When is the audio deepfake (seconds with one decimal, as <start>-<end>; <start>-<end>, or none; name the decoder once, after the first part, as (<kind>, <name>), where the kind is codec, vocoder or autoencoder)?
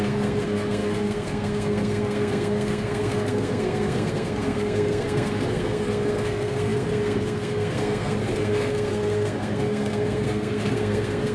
0.0-11.3 (codec, SNAC)